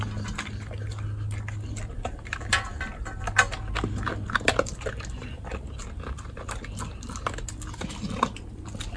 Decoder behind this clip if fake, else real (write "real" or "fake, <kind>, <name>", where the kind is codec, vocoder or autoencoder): real